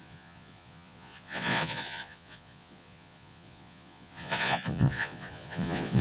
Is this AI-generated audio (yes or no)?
yes